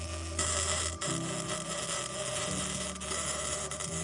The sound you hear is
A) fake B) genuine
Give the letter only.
B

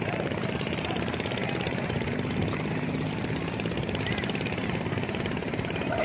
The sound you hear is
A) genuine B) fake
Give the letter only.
B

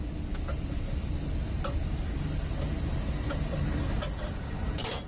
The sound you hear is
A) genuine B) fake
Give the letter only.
A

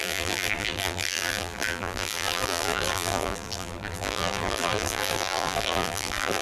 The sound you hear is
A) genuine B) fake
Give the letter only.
B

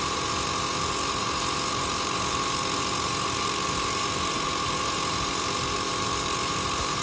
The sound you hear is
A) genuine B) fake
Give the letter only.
B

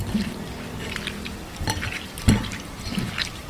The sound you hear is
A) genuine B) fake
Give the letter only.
A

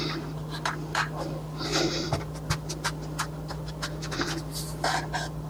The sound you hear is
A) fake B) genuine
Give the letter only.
A